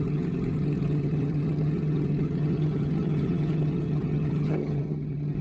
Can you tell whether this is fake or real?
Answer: fake